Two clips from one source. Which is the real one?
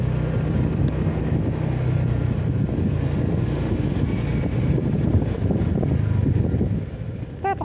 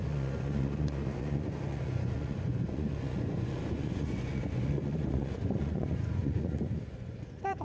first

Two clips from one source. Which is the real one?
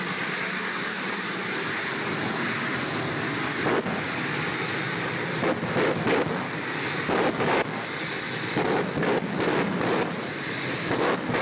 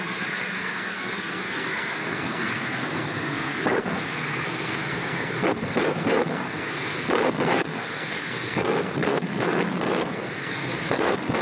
first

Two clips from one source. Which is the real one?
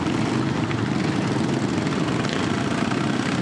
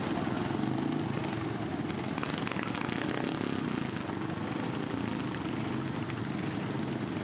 second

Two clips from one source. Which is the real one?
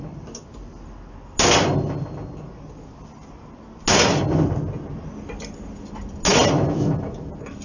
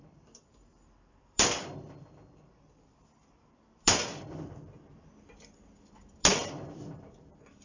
first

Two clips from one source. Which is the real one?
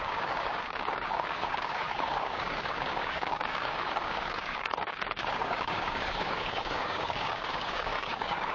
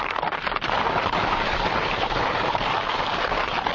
second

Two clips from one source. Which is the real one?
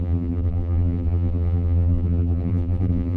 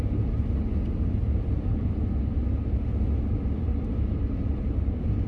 second